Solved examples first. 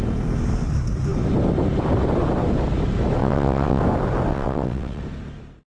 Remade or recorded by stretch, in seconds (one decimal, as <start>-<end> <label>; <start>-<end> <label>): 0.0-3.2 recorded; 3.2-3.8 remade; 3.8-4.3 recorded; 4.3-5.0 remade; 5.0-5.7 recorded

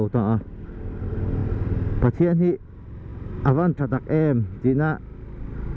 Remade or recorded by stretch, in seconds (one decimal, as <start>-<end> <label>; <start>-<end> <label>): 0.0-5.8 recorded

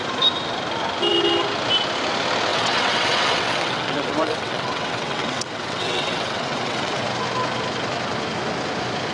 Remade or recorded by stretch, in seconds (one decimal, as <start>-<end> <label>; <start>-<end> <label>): 0.0-2.5 recorded; 2.5-7.0 remade; 7.0-9.1 recorded